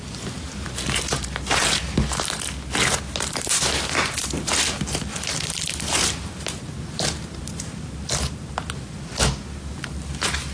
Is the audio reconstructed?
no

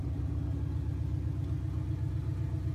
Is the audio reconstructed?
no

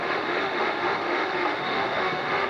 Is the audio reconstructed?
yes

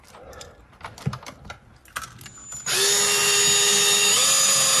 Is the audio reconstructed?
no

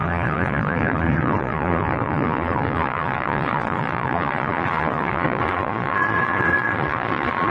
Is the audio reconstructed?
yes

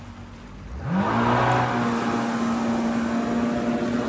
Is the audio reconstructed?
no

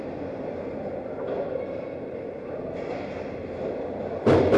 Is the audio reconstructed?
no